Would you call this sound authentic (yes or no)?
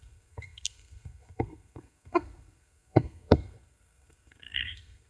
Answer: no